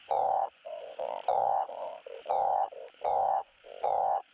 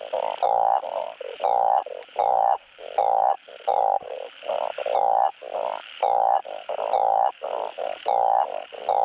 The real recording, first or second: second